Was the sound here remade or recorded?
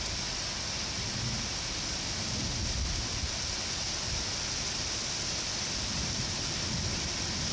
recorded